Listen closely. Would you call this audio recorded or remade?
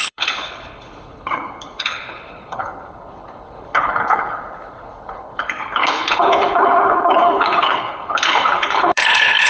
remade